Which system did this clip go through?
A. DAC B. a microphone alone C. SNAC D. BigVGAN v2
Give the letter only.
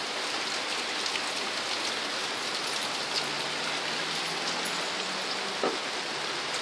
B